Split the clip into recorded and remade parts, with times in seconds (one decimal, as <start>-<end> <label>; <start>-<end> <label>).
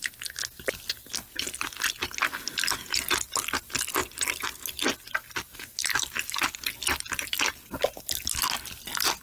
0.0-9.2 recorded